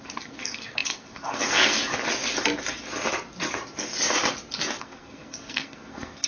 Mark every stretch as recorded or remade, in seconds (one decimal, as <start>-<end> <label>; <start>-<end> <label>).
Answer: 0.0-1.8 remade; 1.8-4.8 recorded; 4.8-6.3 remade